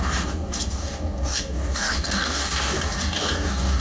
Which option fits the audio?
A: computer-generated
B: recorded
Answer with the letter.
A